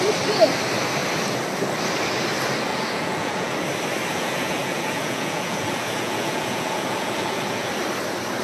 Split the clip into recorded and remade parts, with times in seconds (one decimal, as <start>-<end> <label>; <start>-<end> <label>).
0.0-2.7 recorded; 2.7-3.5 remade; 3.5-4.1 recorded; 4.1-7.7 remade; 7.7-8.4 recorded